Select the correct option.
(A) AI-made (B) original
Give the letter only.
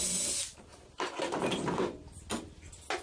B